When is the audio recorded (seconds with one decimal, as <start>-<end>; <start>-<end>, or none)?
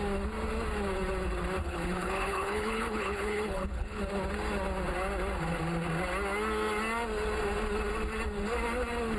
0.0-1.6; 4.0-9.2